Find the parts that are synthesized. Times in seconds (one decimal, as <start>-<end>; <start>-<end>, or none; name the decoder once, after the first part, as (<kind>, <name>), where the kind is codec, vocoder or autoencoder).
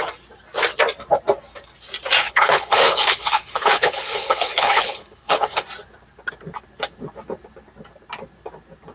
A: 2.2-5.6 (codec, HILCodec)